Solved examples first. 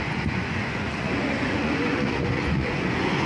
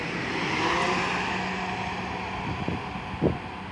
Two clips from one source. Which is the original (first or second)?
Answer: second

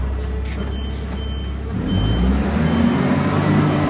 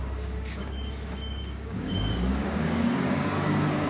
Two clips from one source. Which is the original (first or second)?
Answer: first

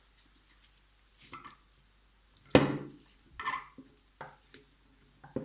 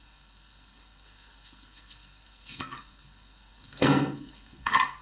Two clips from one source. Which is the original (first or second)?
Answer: first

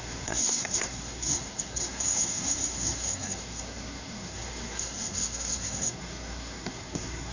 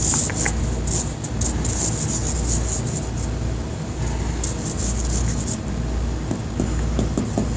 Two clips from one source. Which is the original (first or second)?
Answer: second